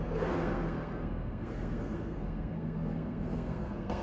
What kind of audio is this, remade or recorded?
remade